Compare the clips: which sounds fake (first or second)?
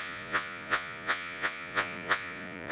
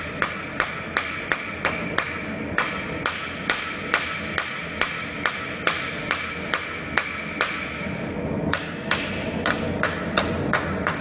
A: first